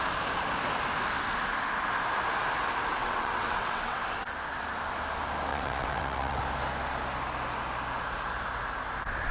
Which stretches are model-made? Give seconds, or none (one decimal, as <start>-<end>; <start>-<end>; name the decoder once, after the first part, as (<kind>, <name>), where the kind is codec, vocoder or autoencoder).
3.0-4.0 (vocoder, WaveNeXt); 5.5-6.4